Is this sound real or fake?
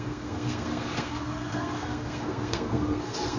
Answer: fake